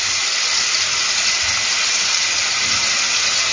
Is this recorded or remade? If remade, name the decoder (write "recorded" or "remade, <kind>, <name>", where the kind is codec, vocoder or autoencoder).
recorded